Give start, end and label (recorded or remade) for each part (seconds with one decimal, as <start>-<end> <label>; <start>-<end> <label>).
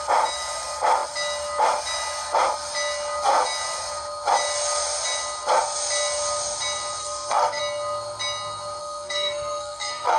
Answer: 0.0-7.0 recorded; 7.0-7.6 remade; 7.6-8.8 recorded; 8.8-10.2 remade